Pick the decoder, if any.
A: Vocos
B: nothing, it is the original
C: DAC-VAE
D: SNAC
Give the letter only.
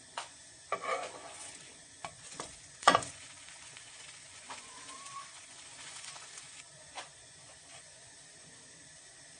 A